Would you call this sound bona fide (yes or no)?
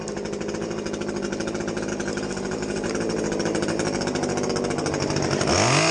yes